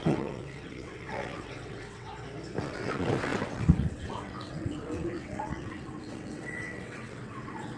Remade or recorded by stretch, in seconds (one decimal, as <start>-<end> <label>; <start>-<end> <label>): 0.0-2.1 remade; 2.1-2.6 recorded; 2.6-7.8 remade